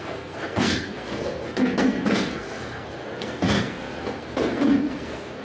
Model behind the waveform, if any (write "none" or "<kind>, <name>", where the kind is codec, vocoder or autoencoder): codec, SNAC